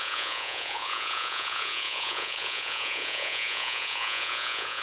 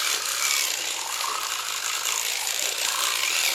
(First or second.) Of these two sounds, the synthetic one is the first